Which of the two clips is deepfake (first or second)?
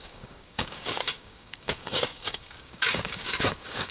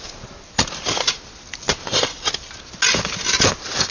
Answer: first